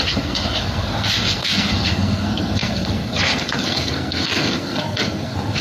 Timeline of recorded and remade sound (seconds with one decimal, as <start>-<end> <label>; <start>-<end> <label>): 0.0-5.6 remade